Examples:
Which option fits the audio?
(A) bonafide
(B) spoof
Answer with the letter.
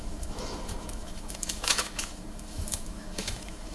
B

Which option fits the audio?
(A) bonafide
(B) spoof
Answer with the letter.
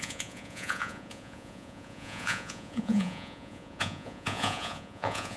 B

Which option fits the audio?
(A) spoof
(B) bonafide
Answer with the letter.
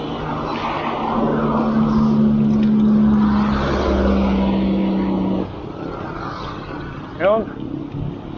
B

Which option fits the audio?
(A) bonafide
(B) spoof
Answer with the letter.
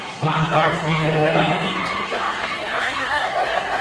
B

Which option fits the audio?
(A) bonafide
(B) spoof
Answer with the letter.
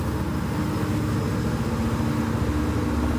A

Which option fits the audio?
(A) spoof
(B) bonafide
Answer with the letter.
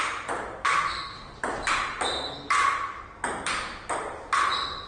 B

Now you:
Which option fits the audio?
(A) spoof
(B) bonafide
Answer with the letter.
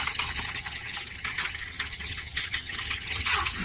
A